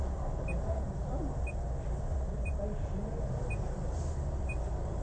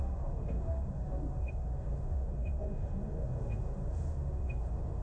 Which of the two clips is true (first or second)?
first